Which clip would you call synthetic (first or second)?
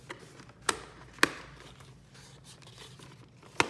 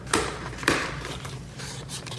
second